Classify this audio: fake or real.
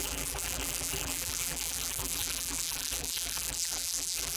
fake